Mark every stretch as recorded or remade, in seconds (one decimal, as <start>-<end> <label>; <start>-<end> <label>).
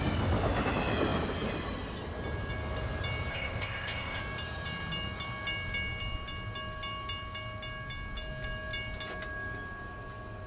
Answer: 0.0-3.3 recorded; 3.3-4.2 remade; 4.2-10.5 recorded